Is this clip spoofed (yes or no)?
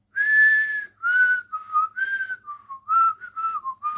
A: no